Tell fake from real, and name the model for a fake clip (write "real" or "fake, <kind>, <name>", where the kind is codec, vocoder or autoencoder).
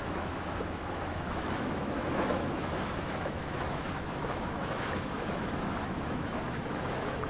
fake, autoencoder, DAC-VAE